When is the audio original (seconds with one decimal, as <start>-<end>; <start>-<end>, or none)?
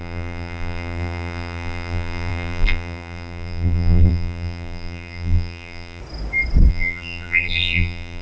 6.0-6.7